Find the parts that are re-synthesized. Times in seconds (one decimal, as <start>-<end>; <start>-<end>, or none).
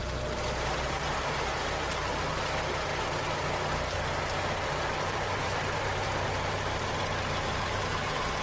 0.5-2.9; 4.3-8.4